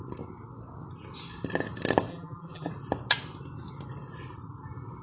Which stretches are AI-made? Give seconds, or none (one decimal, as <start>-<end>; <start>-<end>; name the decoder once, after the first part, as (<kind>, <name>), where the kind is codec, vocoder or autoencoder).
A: 2.1-2.7 (vocoder, BigVGAN v2)